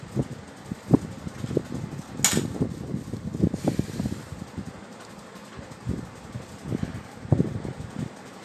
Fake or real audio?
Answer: real